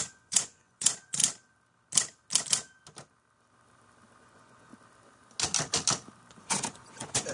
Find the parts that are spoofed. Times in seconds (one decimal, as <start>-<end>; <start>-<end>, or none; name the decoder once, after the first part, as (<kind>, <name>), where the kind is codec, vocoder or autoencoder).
0.0-1.2 (vocoder, Vocos); 4.2-4.7; 6.4-7.3